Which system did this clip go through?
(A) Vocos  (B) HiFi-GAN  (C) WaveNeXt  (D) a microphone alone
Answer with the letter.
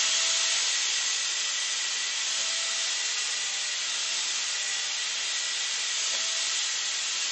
D